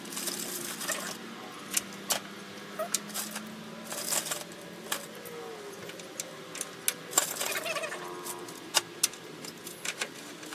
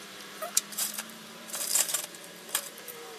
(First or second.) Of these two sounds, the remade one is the second